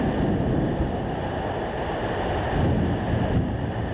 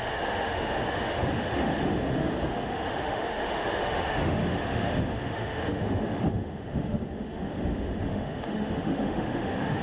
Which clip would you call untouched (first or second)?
first